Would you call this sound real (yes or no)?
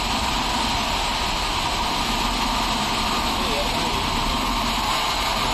yes